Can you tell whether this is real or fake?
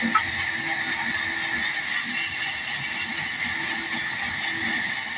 real